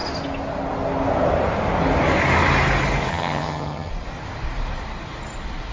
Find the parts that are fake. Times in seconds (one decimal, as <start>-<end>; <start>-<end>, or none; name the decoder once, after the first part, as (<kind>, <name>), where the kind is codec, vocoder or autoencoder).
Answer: 3.1-3.9 (vocoder, HiFi-GAN)

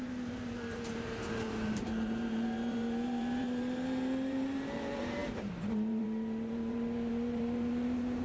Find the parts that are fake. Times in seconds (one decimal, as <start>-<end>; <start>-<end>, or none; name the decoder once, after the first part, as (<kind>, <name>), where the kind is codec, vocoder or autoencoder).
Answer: 0.0-8.2 (vocoder, BigVGAN v2)

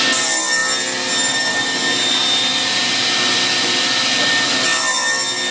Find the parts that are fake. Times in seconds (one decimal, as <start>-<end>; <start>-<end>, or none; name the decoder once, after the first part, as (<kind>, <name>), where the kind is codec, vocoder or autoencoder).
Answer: none